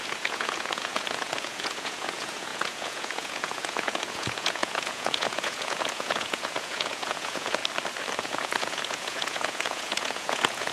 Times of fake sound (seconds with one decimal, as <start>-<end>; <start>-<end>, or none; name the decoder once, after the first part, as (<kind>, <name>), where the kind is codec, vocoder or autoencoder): 0.0-7.6 (vocoder, Vocos); 8.2-10.7